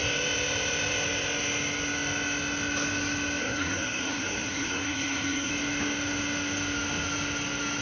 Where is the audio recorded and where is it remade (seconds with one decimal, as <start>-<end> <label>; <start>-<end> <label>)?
0.0-3.4 recorded; 3.4-5.5 remade; 5.5-7.8 recorded